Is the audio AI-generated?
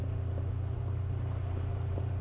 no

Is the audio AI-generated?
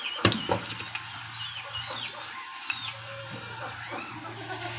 no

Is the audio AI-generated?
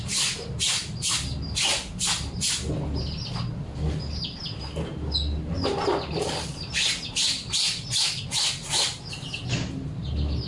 no